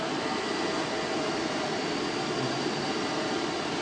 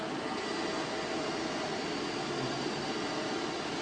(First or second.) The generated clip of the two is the first